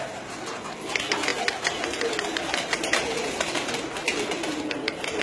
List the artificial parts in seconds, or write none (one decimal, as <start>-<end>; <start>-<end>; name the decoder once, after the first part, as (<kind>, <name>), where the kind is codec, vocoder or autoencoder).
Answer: none